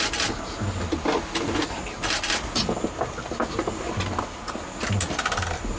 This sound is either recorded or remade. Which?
recorded